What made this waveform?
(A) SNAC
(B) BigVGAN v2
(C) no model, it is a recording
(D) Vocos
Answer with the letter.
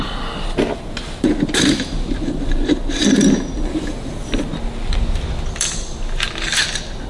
C